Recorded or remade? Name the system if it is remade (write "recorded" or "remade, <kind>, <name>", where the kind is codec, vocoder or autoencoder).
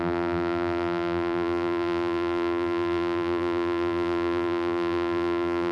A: remade, vocoder, BigVGAN v2